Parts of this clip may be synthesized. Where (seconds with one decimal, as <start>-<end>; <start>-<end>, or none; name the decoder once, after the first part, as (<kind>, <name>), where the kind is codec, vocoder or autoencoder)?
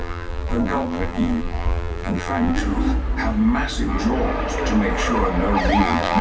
0.0-2.6 (vocoder, BigVGAN v2); 5.8-6.2